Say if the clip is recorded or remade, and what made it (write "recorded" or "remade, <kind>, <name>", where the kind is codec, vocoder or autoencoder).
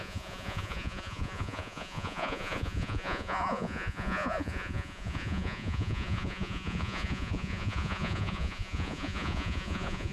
remade, vocoder, Vocos